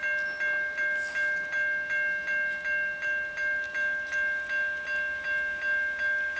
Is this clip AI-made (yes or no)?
no